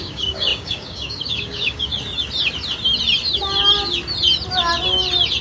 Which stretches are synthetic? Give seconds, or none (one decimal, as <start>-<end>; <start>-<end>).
0.0-1.9